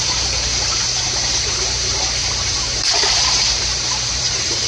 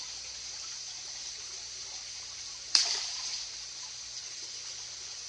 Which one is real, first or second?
second